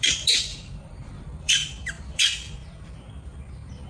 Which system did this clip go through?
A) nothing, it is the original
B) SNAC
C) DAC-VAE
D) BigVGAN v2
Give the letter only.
D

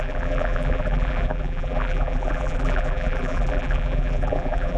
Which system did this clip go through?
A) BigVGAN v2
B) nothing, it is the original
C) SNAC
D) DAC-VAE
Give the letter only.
A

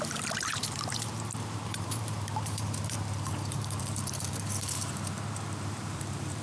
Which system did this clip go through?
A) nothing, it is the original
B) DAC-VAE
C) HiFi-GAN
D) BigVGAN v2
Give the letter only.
D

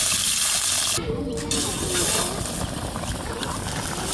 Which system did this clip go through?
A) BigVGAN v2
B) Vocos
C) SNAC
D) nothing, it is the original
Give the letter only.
D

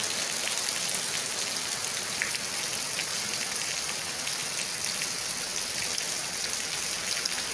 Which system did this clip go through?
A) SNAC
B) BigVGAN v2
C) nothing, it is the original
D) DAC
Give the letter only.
C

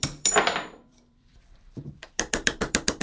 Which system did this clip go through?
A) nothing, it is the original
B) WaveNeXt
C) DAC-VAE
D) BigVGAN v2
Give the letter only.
D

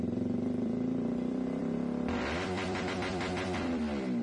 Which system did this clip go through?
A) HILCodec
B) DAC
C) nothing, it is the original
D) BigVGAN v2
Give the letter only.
D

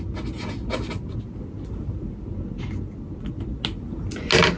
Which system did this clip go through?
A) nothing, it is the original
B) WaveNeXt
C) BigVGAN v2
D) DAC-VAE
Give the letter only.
A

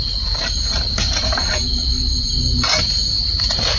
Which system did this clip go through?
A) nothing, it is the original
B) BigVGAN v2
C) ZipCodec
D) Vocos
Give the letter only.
B